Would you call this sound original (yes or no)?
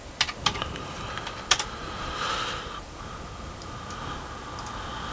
yes